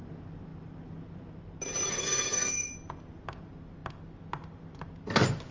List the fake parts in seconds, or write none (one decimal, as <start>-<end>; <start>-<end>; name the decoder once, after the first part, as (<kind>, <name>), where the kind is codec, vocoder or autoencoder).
1.9-2.7 (codec, SNAC)